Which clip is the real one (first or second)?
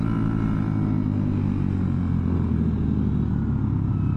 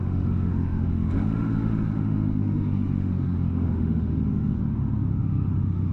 first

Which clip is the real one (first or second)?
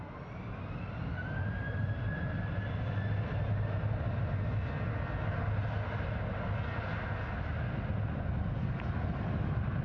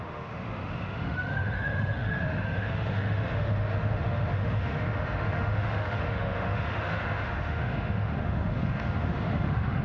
first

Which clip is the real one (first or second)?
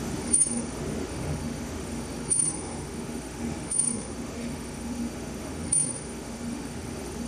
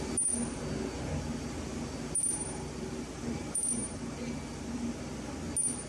second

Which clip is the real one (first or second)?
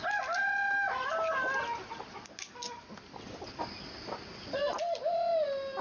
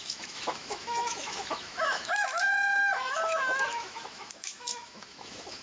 first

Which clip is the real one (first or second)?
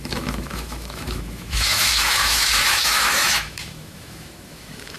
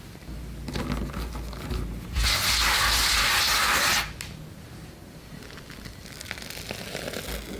second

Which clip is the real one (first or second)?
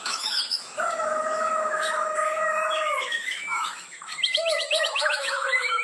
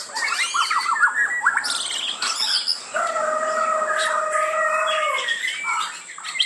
second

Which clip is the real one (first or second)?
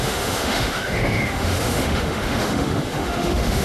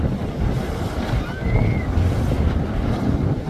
second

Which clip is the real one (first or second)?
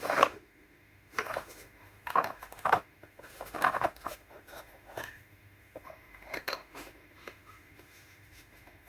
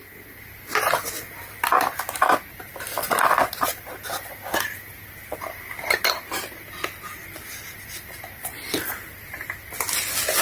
second